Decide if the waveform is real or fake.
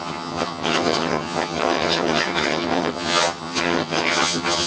fake